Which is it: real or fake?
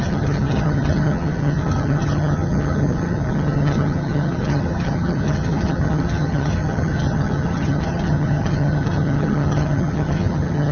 fake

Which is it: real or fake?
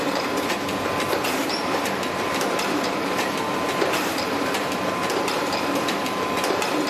fake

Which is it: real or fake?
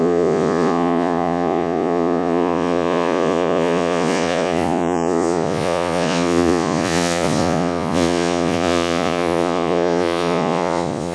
fake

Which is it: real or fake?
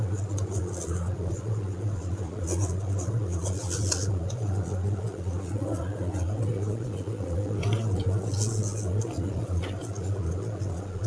fake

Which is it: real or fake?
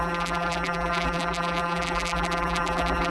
fake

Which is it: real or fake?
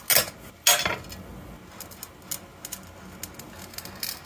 real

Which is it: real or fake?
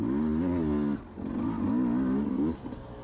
real